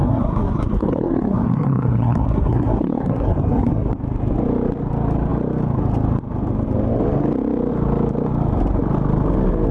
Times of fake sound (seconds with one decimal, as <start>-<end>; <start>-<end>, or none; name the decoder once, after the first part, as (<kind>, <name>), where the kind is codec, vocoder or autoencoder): 0.0-3.9 (codec, SNAC)